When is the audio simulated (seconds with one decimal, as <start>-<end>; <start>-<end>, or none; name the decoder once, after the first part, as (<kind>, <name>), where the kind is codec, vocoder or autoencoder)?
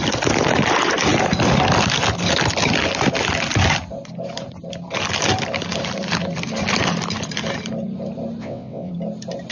8.4-8.9 (vocoder, WaveNeXt)